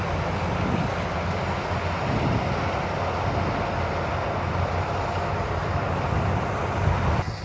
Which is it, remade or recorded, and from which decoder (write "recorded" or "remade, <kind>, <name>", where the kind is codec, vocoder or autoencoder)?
recorded